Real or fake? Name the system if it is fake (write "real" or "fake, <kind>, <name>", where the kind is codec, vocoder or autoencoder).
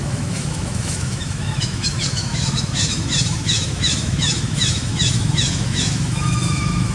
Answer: fake, autoencoder, DAC-VAE